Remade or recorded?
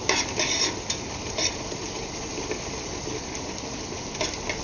recorded